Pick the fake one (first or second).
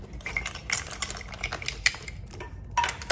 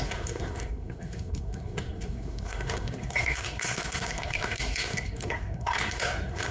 second